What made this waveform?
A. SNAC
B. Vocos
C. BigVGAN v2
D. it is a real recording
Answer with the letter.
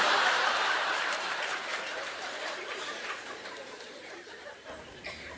C